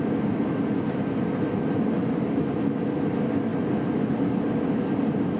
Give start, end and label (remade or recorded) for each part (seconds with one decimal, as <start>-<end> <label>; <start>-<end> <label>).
0.0-5.4 recorded